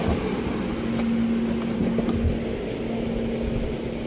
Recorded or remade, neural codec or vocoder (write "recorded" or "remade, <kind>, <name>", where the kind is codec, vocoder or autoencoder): recorded